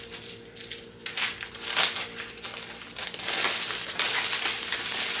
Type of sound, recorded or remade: recorded